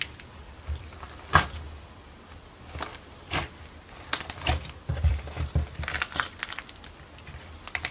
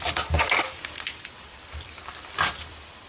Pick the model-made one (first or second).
second